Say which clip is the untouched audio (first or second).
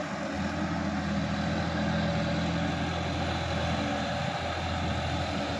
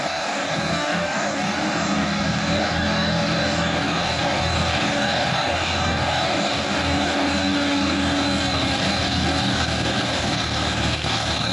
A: first